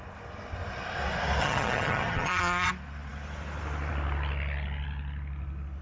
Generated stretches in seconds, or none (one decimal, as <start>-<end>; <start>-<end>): 1.4-2.7